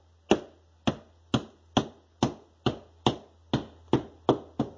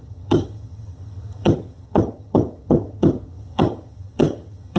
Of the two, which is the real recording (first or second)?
first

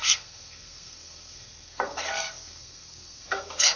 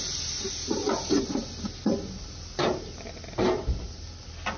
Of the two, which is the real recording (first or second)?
second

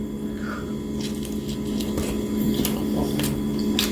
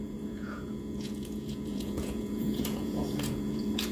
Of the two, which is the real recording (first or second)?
first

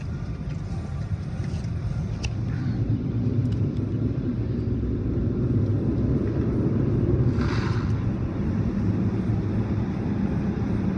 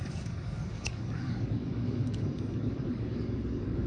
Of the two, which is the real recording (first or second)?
first